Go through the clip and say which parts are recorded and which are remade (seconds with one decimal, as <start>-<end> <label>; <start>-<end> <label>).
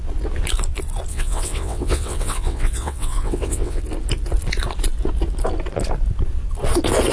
0.0-1.1 recorded; 1.1-3.8 remade; 3.8-7.1 recorded